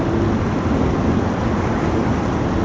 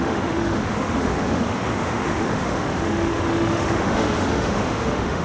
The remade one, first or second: second